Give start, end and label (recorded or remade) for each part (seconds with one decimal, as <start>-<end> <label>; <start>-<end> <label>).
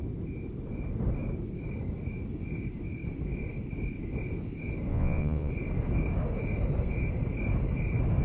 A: 0.0-4.9 recorded; 4.9-5.5 remade; 5.5-8.2 recorded